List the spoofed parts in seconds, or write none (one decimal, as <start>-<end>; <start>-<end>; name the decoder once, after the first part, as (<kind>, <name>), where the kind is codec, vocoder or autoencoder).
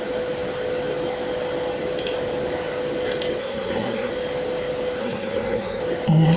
3.4-4.1 (codec, SNAC); 5.0-5.8